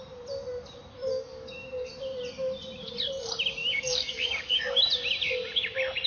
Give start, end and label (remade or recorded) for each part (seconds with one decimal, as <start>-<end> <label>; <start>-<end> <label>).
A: 0.0-1.1 recorded; 1.1-1.9 remade; 1.9-3.6 recorded; 3.6-4.6 remade; 4.6-6.1 recorded